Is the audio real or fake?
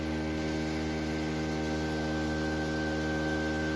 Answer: real